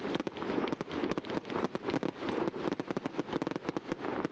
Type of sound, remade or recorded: recorded